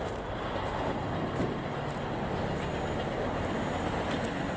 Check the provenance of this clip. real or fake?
real